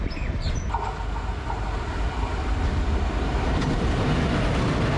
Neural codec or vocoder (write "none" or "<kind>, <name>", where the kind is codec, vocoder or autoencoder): none